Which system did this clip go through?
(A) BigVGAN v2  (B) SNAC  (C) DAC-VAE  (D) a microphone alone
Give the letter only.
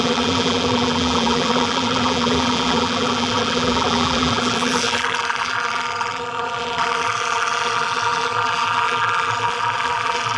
A